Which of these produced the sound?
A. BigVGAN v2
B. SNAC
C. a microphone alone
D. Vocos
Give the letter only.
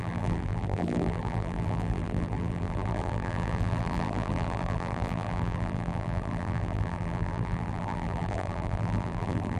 A